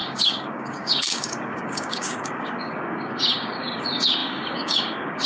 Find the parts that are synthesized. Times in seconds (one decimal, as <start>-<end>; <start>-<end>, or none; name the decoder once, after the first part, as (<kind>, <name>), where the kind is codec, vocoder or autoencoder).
0.0-5.3 (codec, DAC)